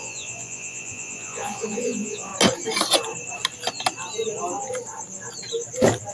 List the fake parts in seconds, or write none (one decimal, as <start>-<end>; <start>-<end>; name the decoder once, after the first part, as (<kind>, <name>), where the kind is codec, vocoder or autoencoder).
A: 0.0-2.3 (vocoder, Vocos)